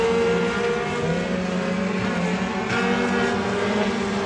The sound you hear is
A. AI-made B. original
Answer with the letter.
B